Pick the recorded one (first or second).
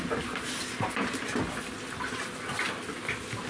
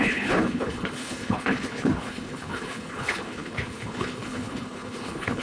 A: first